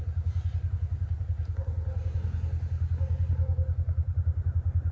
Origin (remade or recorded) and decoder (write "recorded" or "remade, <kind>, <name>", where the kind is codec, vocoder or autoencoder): recorded